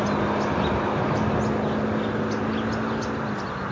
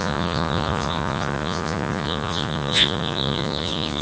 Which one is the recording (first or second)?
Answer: first